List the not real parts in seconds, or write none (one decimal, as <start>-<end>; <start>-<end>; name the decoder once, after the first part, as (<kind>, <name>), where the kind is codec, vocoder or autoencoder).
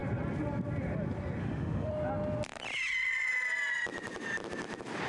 1.4-1.9 (autoencoder, DAC-VAE)